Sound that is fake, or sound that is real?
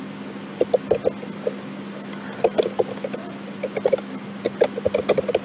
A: real